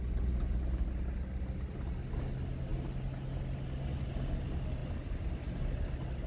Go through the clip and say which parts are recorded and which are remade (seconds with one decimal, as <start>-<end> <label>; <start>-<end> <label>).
0.0-6.3 recorded